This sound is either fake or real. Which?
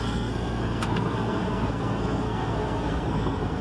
fake